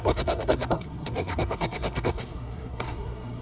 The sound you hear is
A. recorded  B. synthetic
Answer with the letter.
B